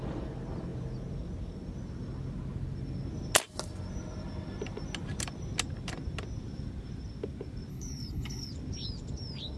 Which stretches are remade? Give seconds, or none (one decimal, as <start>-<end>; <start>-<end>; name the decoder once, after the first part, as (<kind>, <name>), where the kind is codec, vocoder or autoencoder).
7.7-8.5 (codec, HILCodec)